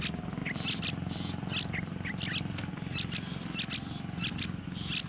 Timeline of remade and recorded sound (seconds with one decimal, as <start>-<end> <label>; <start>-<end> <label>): 0.0-5.1 recorded